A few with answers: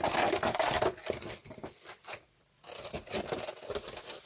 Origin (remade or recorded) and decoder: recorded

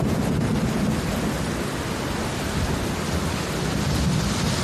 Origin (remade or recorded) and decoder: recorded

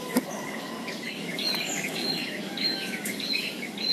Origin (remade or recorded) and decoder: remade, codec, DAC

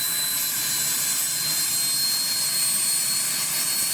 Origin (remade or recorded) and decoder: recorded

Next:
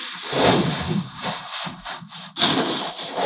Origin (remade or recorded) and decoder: recorded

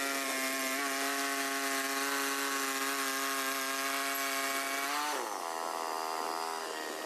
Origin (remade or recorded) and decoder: recorded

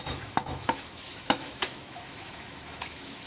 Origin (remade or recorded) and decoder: remade, autoencoder, DAC-VAE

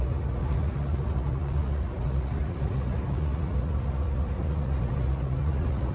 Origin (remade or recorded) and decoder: remade, vocoder, Vocos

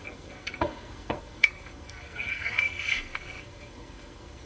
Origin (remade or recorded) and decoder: remade, codec, SNAC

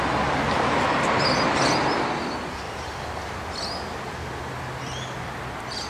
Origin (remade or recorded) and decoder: recorded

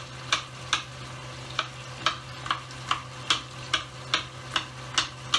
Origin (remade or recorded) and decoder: recorded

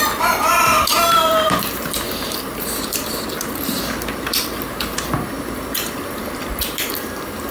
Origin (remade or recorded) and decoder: remade, vocoder, BigVGAN v2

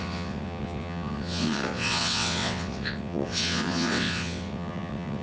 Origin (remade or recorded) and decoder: remade, vocoder, WaveNeXt